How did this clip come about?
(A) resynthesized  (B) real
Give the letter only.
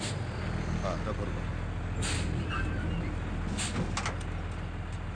B